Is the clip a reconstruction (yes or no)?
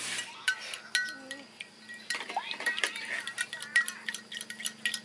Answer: no